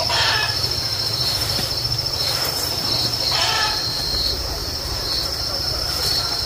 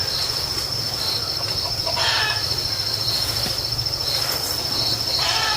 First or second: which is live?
second